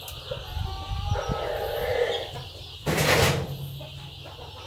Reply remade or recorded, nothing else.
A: recorded